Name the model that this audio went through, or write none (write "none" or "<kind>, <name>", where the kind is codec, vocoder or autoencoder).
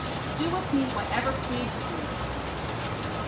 none